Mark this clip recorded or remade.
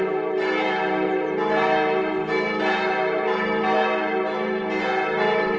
recorded